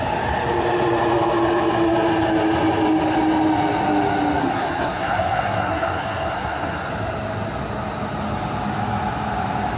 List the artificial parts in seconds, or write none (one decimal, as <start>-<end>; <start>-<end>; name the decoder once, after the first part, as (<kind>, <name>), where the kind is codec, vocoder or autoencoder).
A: 4.4-6.9 (codec, SNAC)